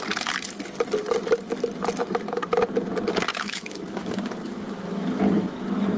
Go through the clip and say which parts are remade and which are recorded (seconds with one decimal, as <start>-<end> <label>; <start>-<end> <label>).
0.0-3.3 recorded; 3.3-6.0 remade